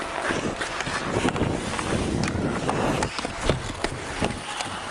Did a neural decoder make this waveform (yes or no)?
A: no